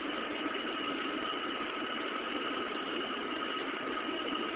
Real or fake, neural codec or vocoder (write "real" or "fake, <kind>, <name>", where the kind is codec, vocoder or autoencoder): real